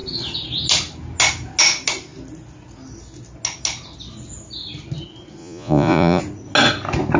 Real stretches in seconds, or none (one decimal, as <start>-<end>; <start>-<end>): 0.0-5.4; 6.2-7.2